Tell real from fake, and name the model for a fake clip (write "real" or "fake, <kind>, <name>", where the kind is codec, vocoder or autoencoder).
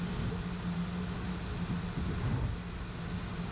real